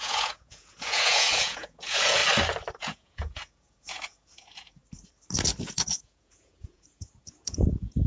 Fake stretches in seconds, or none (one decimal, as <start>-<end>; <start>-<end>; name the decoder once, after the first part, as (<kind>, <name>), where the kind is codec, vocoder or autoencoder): 0.0-2.2 (vocoder, Vocos); 2.8-4.8; 5.6-8.1